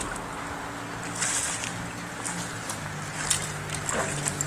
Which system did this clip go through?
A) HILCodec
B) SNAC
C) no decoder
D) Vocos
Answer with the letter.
C